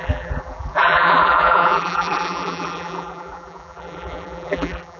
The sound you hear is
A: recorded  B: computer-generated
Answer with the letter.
B